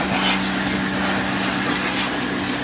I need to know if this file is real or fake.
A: real